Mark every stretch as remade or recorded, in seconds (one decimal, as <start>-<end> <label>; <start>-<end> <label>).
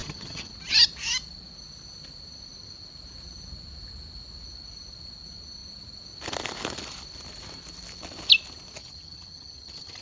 0.0-0.5 remade; 0.5-8.8 recorded; 8.8-10.0 remade